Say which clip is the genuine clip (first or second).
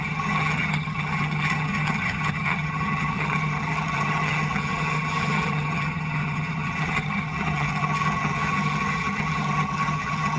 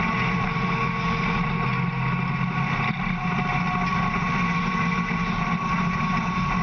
second